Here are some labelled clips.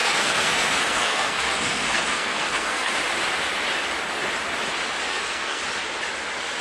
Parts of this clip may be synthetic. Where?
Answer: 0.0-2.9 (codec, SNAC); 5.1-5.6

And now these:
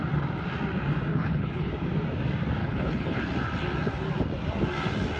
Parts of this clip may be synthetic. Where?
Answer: 1.1-1.7 (codec, HILCodec); 2.6-3.2

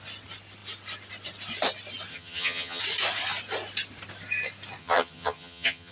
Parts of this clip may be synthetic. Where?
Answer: 2.1-2.8 (vocoder, HiFi-GAN); 4.8-5.9